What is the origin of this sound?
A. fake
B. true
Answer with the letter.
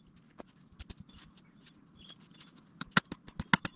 B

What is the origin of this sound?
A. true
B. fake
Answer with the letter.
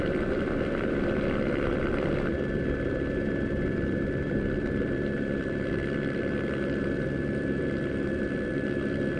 B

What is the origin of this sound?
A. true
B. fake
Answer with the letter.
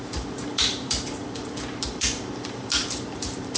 B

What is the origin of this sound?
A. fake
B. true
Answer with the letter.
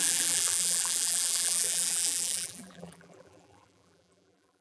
A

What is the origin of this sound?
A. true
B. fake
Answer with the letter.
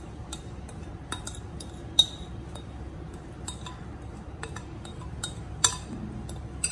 B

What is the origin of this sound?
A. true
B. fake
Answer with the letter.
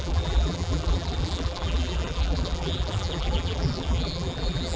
B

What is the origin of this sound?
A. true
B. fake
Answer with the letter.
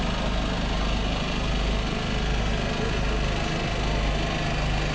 A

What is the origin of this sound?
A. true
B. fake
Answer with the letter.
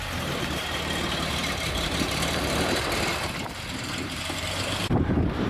B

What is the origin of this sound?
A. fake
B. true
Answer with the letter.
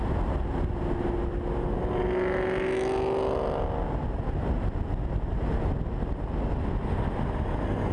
B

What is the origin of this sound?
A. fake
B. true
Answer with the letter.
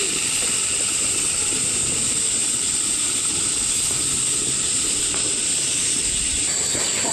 B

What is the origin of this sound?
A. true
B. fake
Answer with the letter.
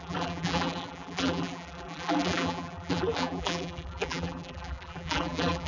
B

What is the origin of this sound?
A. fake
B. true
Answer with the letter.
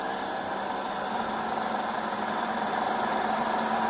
B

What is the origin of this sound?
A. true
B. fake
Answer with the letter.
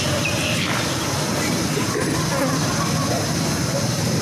A